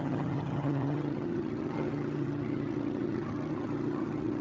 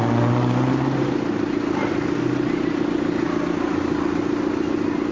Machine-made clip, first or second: first